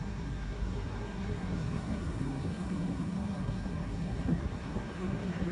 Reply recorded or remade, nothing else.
remade